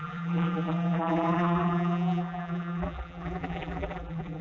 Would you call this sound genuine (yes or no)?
no